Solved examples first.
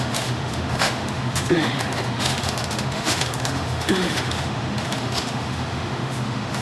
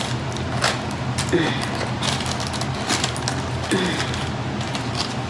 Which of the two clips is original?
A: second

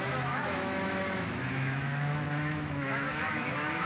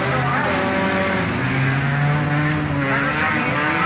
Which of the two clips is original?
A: second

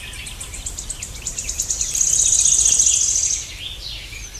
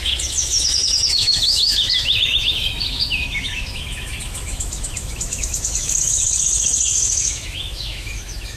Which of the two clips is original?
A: first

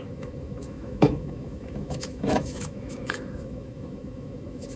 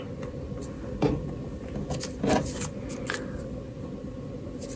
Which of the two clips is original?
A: second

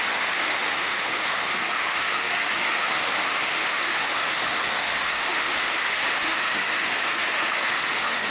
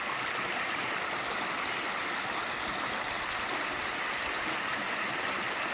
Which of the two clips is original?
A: second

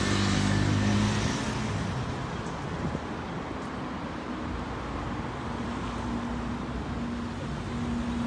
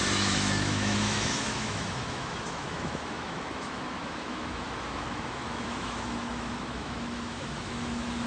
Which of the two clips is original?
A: first